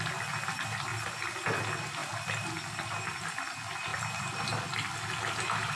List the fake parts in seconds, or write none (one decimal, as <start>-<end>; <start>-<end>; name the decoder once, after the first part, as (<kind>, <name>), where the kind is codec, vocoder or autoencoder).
none